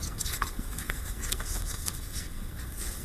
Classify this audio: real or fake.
fake